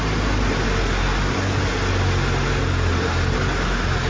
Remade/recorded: recorded